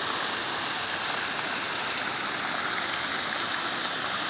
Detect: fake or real real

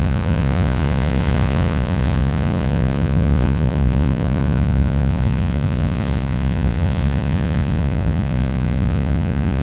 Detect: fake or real fake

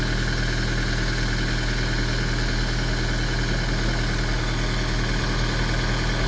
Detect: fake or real real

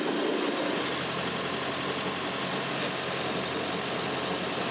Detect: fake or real real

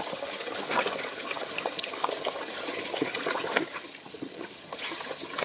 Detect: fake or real fake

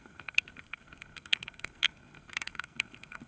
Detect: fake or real fake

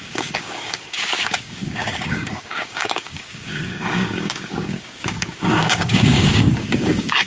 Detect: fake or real fake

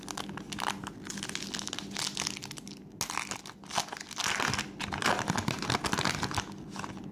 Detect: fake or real real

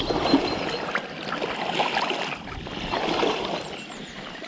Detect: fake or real real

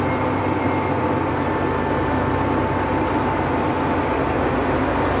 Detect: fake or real real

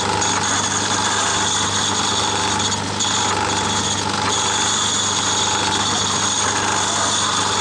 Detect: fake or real real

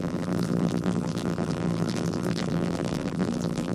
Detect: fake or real fake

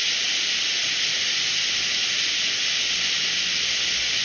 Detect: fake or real real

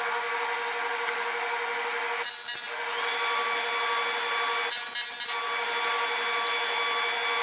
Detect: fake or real real